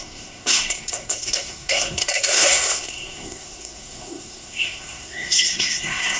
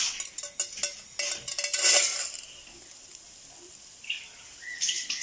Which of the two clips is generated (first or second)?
first